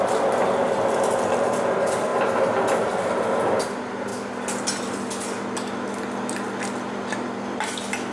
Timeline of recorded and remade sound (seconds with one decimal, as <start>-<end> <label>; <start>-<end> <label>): 0.0-8.1 recorded